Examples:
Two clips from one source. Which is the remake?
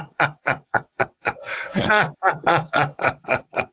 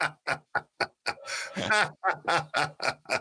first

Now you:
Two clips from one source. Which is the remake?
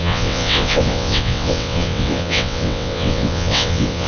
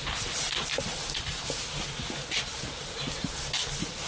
first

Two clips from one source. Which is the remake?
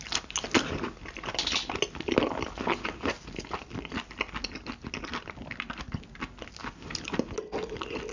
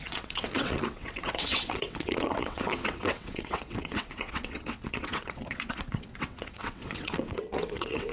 second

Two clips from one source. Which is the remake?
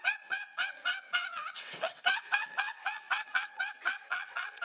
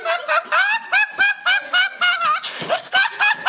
first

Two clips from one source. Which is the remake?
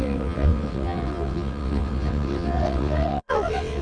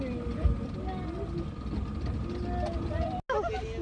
first